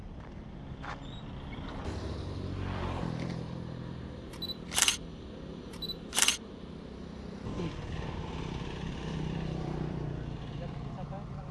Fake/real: fake